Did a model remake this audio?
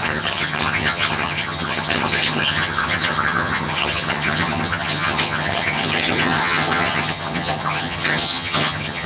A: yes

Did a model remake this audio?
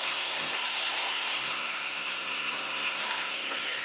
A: yes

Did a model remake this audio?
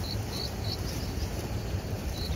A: no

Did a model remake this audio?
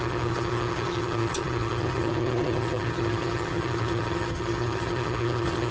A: yes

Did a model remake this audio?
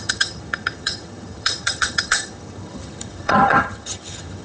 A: yes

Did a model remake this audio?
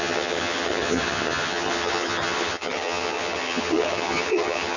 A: yes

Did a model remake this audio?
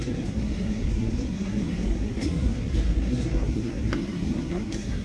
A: yes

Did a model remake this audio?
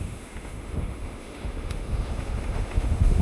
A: yes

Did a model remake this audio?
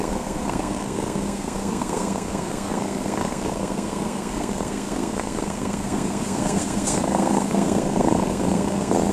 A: yes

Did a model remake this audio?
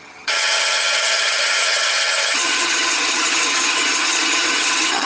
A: yes